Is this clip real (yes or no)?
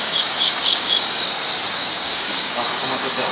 no